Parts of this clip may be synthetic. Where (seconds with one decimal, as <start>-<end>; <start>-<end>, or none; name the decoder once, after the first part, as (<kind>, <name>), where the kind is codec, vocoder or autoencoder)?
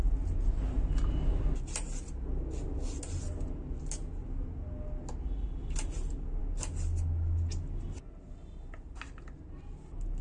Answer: none